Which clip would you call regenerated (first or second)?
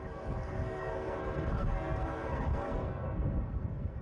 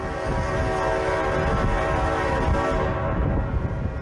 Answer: first